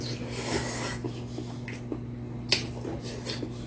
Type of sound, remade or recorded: recorded